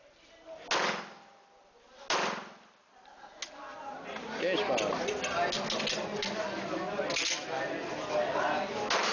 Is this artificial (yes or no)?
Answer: no